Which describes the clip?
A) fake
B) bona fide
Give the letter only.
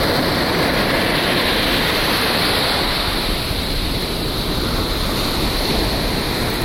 B